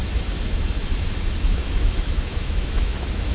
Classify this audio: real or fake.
fake